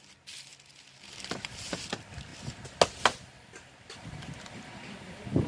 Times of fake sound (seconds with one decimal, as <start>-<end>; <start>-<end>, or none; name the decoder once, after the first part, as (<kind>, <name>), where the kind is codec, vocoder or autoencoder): none